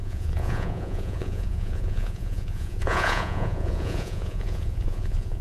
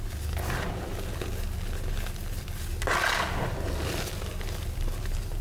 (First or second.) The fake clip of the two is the first